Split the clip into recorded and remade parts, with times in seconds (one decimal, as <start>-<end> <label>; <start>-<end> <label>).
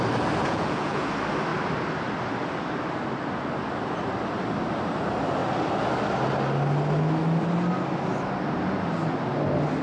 0.0-0.4 recorded; 0.4-1.1 remade; 1.1-9.8 recorded